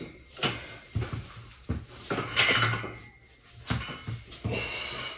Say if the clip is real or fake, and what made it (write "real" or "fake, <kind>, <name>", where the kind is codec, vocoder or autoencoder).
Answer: real